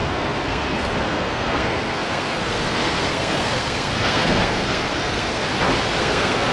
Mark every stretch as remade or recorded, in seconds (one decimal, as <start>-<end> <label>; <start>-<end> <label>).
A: 0.0-5.5 remade; 5.5-6.0 recorded; 6.0-6.5 remade